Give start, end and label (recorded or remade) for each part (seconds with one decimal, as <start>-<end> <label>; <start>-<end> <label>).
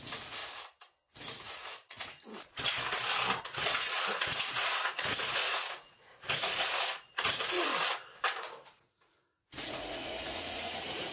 0.0-0.4 remade; 0.4-1.2 recorded; 1.2-2.3 remade; 2.3-3.4 recorded; 3.4-7.7 remade; 7.7-8.4 recorded; 8.4-11.1 remade